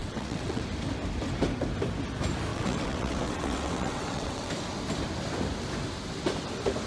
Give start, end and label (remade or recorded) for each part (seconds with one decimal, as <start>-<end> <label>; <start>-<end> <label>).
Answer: 0.0-0.6 remade; 0.6-2.5 recorded; 2.5-4.5 remade; 4.5-6.9 recorded

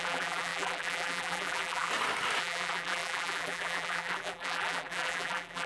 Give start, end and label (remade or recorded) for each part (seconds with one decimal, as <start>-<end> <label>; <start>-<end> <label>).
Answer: 0.0-1.9 remade; 1.9-2.4 recorded; 2.4-5.7 remade

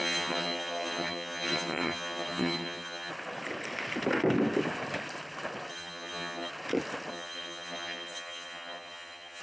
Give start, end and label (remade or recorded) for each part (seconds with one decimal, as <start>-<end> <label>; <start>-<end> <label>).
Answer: 0.0-3.1 remade; 3.1-5.7 recorded; 5.7-6.5 remade; 6.5-7.1 recorded; 7.1-9.4 remade

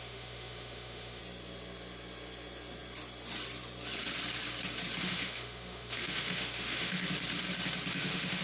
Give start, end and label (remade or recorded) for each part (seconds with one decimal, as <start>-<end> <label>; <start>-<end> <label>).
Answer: 0.0-1.2 remade; 1.2-5.0 recorded; 5.0-7.0 remade; 7.0-7.9 recorded; 7.9-8.4 remade

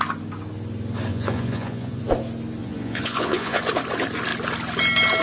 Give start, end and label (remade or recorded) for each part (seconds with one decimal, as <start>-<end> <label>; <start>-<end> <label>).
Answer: 0.0-1.1 recorded; 1.1-2.0 remade; 2.0-2.6 recorded; 2.6-3.6 remade; 3.6-5.2 recorded

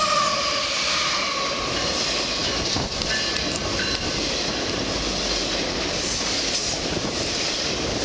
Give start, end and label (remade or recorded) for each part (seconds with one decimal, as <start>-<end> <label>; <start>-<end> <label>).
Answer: 0.0-8.0 recorded

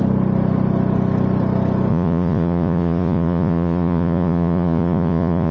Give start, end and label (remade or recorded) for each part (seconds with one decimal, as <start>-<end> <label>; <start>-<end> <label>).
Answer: 0.0-1.9 recorded; 1.9-5.5 remade

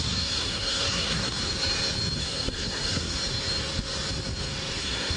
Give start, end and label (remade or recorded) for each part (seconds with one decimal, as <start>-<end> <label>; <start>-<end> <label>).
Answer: 0.0-1.4 remade; 1.4-2.2 recorded; 2.2-3.2 remade; 3.2-4.8 recorded; 4.8-5.2 remade